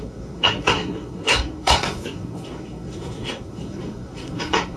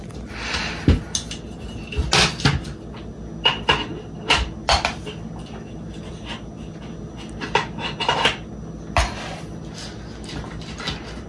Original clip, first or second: second